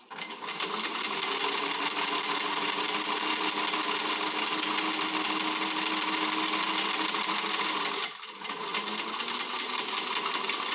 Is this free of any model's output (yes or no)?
yes